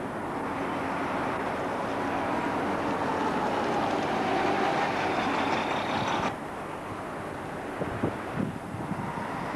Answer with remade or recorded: recorded